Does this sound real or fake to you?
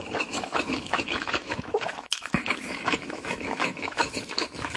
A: fake